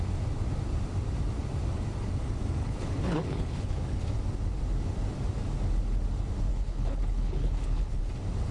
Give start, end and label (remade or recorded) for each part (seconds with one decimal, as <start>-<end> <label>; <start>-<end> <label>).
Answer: 0.0-2.6 recorded; 2.6-4.0 remade; 4.0-6.5 recorded; 6.5-8.0 remade; 8.0-8.5 recorded